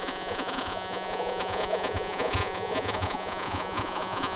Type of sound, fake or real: fake